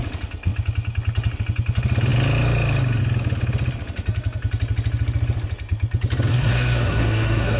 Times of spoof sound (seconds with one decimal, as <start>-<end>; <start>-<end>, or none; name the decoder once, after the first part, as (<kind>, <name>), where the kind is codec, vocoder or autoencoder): 6.3-7.6 (codec, SNAC)